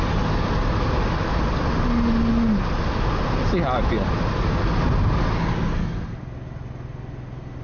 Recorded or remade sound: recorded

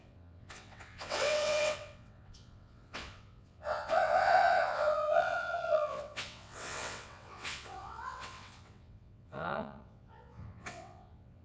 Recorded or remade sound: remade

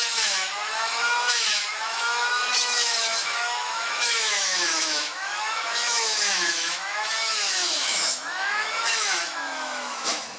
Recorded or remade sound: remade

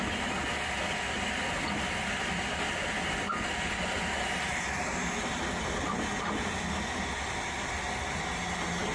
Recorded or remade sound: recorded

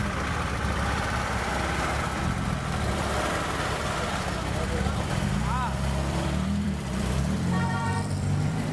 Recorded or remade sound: remade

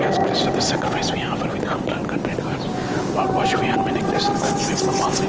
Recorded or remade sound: recorded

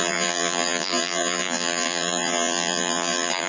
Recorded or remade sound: remade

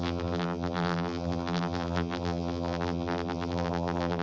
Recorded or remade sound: remade